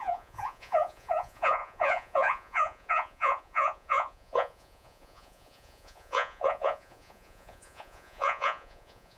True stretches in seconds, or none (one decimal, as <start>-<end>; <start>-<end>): none